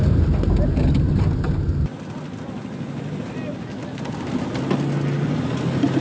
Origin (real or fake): real